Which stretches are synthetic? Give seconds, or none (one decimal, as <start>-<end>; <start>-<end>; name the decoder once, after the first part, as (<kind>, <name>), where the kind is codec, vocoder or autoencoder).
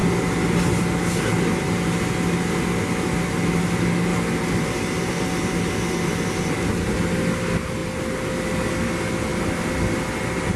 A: 7.8-8.6 (vocoder, BigVGAN v2)